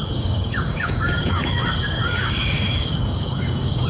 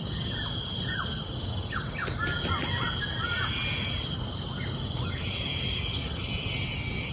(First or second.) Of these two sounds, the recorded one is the second